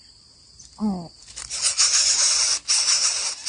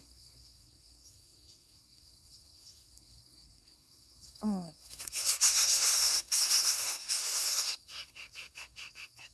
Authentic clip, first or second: first